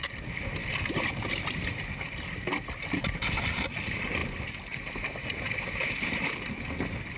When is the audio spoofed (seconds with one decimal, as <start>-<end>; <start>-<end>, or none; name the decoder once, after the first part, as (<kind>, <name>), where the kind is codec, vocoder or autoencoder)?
none